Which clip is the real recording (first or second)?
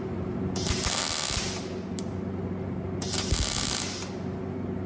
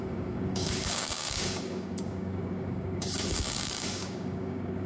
first